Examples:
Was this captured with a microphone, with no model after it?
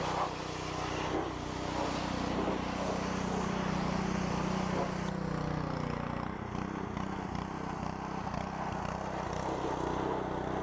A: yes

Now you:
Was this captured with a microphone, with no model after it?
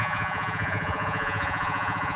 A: no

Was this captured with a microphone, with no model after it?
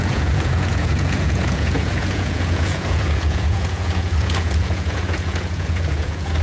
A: no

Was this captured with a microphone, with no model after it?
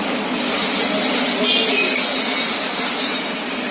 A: yes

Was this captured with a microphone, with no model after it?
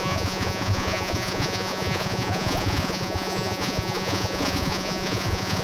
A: no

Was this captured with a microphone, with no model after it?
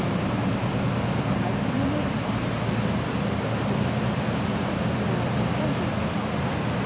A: yes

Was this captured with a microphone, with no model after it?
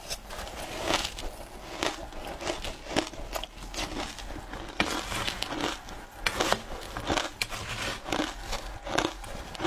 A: yes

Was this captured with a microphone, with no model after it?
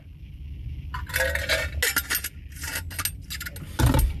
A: yes